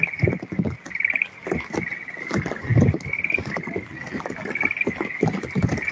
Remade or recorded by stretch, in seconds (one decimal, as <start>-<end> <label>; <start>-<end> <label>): 0.0-5.9 recorded